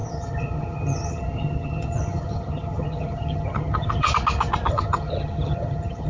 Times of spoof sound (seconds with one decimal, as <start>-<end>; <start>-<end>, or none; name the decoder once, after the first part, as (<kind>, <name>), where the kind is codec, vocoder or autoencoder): 0.0-4.1 (vocoder, HiFi-GAN); 4.7-6.1